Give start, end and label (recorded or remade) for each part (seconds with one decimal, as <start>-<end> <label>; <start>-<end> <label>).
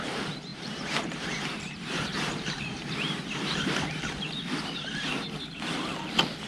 0.0-0.5 recorded; 0.5-4.4 remade; 4.4-6.5 recorded